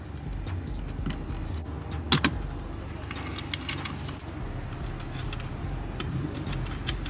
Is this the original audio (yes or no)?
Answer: yes